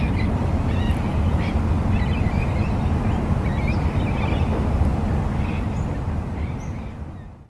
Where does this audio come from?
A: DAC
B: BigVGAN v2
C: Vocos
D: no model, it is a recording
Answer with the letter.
D